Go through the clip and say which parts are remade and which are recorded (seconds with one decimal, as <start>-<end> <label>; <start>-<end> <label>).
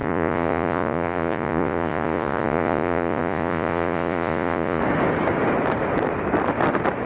0.0-4.8 remade; 4.8-7.1 recorded